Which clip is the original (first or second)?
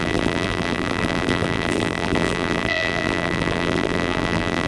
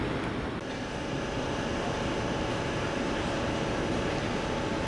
second